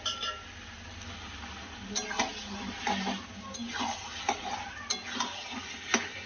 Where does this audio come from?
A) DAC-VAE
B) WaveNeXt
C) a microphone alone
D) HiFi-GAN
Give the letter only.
C